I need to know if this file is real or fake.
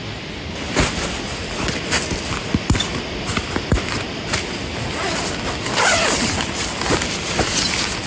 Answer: real